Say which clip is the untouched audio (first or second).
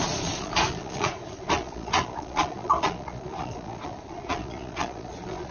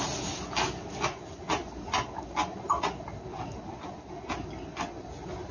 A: second